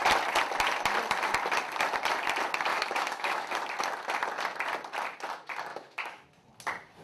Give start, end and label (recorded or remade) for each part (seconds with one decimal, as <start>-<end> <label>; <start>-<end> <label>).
0.0-2.7 recorded; 2.7-3.5 remade; 3.5-5.7 recorded; 5.7-6.3 remade; 6.3-7.0 recorded